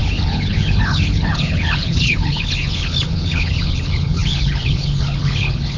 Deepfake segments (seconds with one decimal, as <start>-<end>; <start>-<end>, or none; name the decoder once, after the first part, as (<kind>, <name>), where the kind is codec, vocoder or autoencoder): 0.0-5.8 (codec, HILCodec)